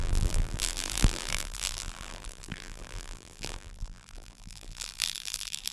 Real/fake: fake